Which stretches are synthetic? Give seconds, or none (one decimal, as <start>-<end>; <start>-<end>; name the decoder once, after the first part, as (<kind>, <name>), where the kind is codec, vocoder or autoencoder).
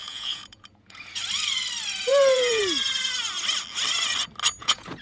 0.0-1.2 (vocoder, Vocos); 2.0-2.6; 4.6-5.0